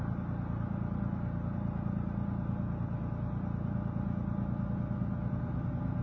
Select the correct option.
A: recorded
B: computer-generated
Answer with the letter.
A